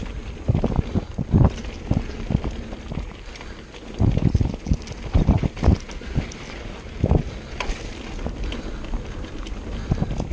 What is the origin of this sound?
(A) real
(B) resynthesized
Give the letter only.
A